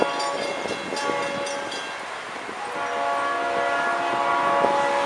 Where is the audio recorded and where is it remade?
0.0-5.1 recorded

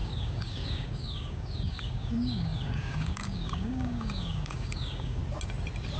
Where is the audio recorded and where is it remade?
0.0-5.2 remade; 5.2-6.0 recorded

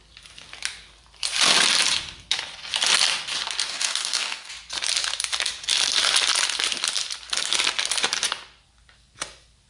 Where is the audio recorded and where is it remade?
0.0-3.7 recorded; 3.7-4.5 remade; 4.5-9.7 recorded

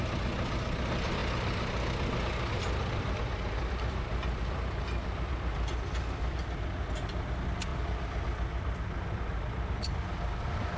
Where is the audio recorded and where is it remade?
0.0-10.8 recorded